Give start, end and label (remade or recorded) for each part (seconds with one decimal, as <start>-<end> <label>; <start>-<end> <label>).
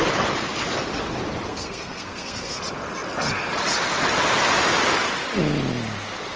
0.0-1.5 recorded; 1.5-2.6 remade; 2.6-6.4 recorded